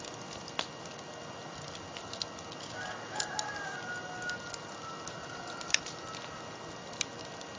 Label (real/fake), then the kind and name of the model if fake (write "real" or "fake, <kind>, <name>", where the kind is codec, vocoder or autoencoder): real